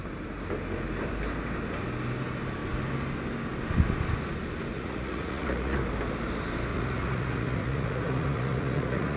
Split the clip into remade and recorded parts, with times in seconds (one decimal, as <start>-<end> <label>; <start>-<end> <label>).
0.0-4.7 recorded; 4.7-5.8 remade; 5.8-6.7 recorded; 6.7-9.2 remade